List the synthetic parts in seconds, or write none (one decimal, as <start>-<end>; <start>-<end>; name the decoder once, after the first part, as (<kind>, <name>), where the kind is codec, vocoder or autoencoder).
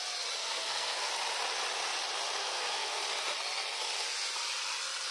0.4-1.1 (codec, SNAC); 2.4-3.0